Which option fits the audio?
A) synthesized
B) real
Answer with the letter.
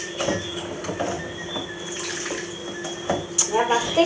B